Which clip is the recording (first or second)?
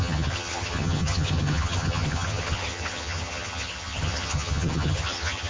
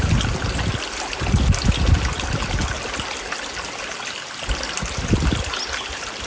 second